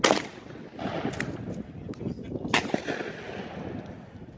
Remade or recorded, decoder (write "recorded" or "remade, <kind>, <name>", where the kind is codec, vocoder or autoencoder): recorded